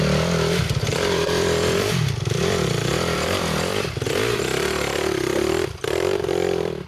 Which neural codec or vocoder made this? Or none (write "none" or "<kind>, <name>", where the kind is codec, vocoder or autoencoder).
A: vocoder, BigVGAN v2